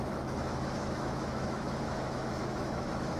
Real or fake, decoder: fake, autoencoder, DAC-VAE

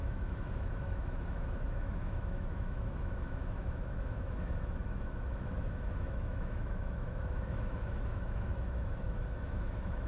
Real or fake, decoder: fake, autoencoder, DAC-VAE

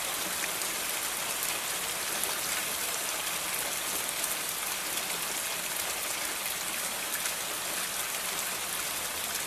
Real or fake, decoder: real